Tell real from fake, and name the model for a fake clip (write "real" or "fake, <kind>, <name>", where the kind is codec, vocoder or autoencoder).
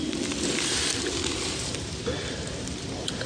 fake, vocoder, BigVGAN v2